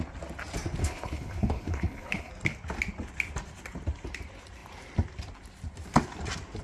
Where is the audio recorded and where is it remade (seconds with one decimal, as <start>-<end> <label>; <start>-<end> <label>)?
0.0-0.8 recorded; 0.8-2.3 remade; 2.3-6.6 recorded